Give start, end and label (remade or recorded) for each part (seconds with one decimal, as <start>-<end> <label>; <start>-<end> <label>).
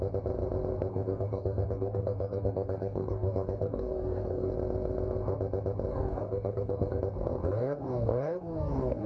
0.0-0.9 recorded; 0.9-4.5 remade; 4.5-5.9 recorded; 5.9-7.0 remade; 7.0-7.4 recorded; 7.4-9.1 remade